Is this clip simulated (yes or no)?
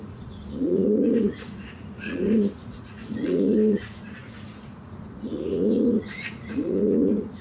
yes